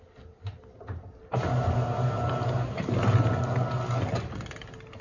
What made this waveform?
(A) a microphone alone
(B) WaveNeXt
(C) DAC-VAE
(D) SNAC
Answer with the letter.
A